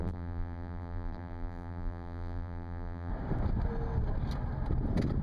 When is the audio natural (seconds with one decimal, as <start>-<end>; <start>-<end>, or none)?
3.1-5.2